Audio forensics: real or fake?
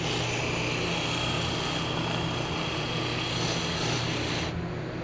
real